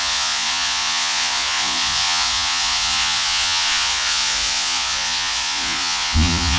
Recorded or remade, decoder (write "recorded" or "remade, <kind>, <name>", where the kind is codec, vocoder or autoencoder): remade, vocoder, Vocos